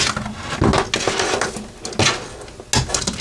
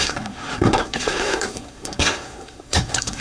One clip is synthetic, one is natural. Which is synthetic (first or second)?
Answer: second